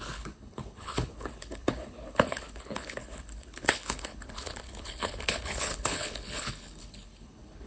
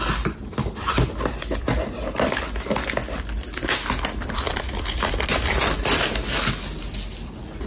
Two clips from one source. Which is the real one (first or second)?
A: second